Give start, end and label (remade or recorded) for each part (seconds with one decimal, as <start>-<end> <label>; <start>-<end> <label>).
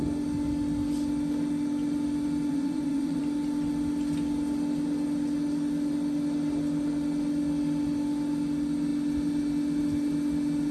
0.0-2.5 recorded; 2.5-3.2 remade; 3.2-10.7 recorded